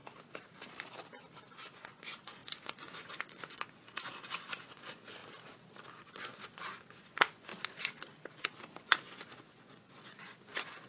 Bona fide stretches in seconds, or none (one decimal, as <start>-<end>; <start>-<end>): 0.0-1.5; 5.2-5.9; 7.5-8.8